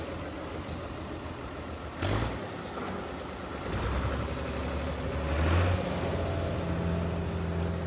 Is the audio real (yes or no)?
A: yes